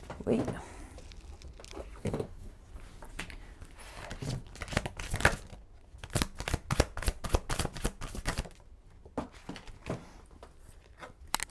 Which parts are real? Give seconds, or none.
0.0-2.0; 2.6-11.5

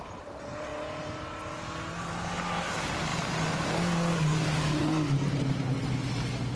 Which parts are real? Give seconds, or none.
0.0-6.6

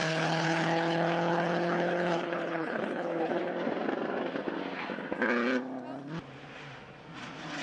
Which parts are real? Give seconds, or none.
3.5-7.6

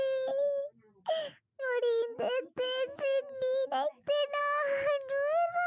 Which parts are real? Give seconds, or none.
0.0-1.2; 4.4-5.7

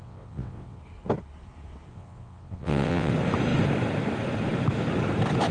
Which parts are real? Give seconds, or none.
0.8-1.9; 3.1-5.5

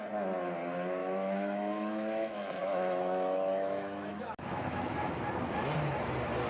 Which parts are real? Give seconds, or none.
0.0-1.0; 4.9-6.5

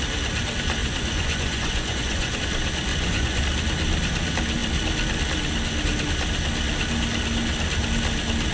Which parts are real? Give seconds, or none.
0.0-0.8; 2.4-2.9; 3.4-8.5

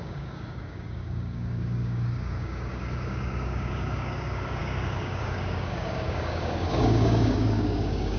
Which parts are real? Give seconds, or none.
none